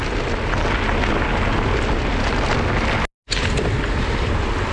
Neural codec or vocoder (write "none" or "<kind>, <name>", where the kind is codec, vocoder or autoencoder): none